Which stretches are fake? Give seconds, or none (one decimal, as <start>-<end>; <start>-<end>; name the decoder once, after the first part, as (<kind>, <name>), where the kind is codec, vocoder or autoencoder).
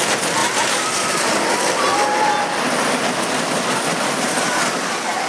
none